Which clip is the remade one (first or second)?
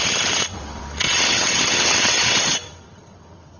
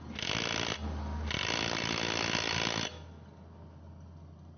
first